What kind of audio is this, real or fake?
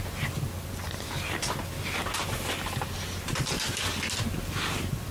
real